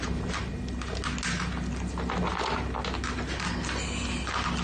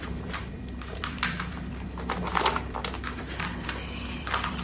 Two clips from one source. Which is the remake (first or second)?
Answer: second